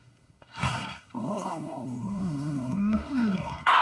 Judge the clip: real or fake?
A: fake